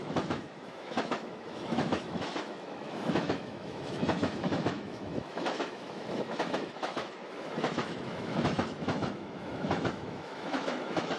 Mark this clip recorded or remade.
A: remade